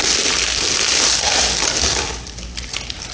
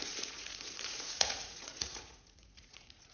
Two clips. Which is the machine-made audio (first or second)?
second